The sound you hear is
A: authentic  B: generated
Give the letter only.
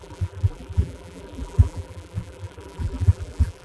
B